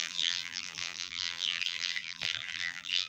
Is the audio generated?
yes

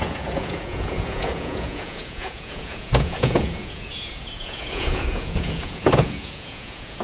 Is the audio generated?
yes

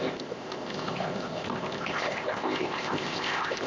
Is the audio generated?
yes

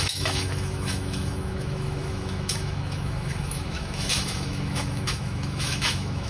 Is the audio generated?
yes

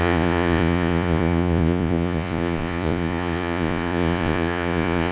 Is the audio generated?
yes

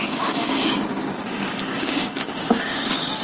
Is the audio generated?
yes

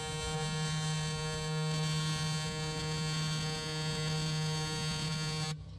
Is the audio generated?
no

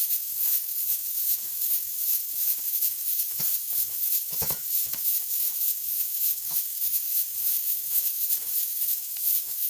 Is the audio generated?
yes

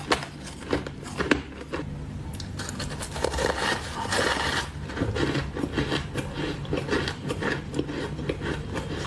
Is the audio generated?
no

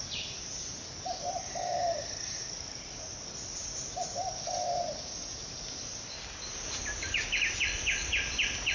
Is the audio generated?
no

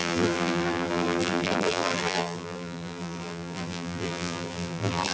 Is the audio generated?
yes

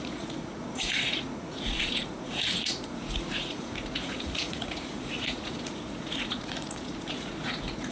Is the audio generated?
yes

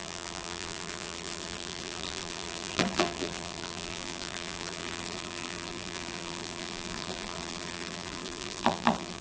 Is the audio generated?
yes